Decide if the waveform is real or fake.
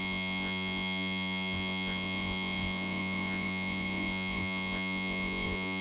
fake